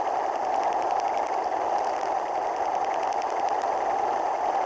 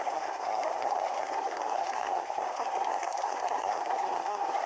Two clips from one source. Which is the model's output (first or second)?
second